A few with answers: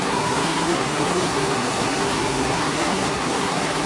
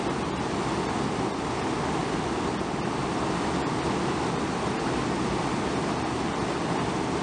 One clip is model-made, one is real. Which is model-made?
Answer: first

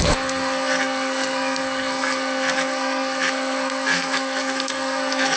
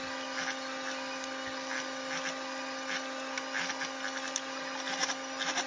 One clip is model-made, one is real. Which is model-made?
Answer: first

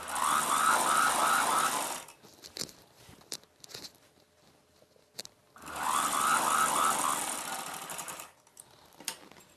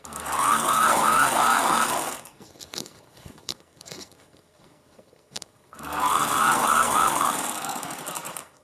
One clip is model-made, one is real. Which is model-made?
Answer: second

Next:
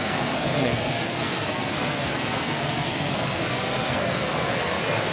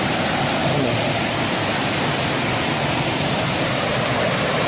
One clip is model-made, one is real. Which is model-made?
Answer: first